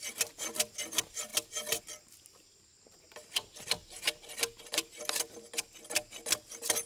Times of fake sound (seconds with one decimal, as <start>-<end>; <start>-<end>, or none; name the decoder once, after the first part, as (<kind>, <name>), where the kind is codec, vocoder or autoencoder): none